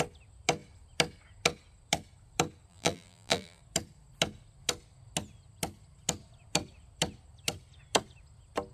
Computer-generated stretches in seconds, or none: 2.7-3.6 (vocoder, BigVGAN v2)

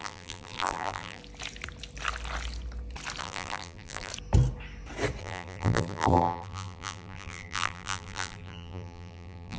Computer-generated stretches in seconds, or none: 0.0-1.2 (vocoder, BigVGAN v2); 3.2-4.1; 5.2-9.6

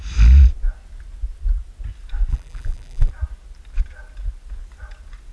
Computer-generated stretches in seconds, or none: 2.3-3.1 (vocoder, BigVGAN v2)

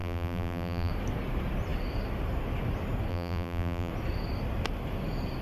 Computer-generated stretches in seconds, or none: 0.0-0.9 (vocoder, BigVGAN v2); 3.1-3.9

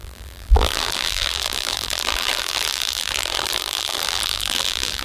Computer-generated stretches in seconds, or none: 0.0-5.0 (vocoder, BigVGAN v2)

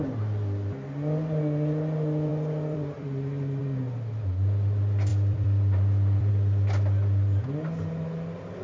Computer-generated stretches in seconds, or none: 2.3-3.6 (vocoder, BigVGAN v2); 5.1-6.3